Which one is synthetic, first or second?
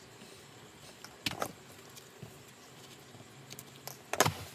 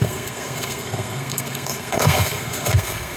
second